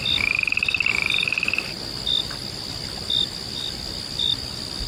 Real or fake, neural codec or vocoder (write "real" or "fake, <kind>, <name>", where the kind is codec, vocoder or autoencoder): real